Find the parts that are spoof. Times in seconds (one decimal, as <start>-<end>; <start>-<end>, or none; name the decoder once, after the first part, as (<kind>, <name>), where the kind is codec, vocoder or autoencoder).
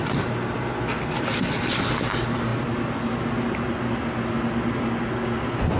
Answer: none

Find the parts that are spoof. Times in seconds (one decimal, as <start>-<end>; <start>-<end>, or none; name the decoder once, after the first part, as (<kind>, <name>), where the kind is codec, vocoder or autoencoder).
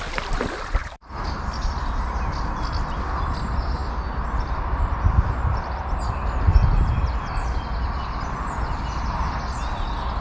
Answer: 0.8-1.3 (vocoder, BigVGAN v2)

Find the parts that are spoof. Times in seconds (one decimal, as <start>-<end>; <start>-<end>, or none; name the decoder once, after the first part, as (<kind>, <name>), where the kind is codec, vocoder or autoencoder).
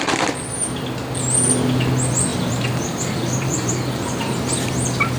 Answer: 2.3-3.7 (vocoder, BigVGAN v2)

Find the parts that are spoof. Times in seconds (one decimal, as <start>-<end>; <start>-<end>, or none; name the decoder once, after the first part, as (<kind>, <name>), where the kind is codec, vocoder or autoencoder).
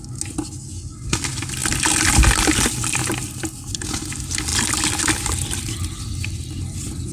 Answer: 1.6-2.8 (vocoder, BigVGAN v2)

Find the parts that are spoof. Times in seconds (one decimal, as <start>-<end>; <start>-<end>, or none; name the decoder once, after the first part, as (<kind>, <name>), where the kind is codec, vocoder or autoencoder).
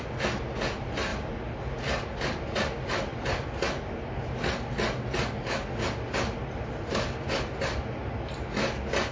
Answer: none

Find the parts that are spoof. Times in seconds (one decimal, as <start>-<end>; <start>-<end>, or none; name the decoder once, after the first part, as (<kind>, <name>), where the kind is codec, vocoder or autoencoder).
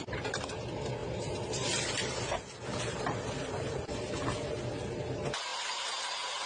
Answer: 1.0-4.1 (vocoder, BigVGAN v2)